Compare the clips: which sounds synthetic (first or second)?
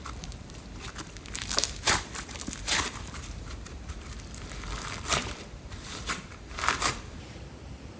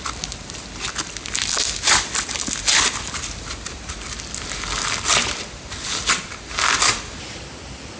first